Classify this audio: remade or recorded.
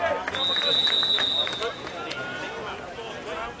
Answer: recorded